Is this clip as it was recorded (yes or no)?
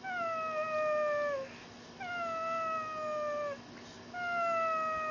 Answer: yes